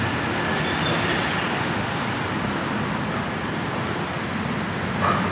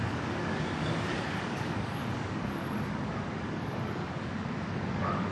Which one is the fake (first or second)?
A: second